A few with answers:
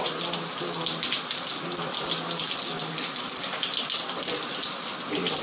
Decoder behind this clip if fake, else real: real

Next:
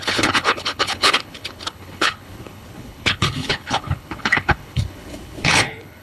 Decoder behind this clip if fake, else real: fake, codec, HILCodec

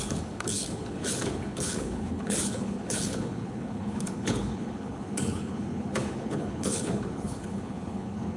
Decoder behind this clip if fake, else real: fake, codec, HILCodec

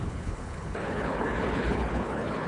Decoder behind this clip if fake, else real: fake, codec, HILCodec